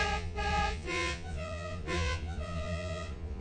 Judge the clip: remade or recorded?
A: remade